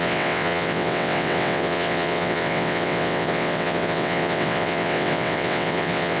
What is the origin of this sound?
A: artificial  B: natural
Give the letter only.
A